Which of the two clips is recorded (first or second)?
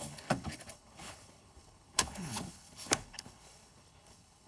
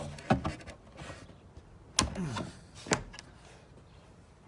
second